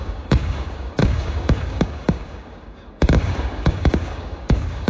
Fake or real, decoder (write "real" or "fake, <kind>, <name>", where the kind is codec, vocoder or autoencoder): fake, codec, DAC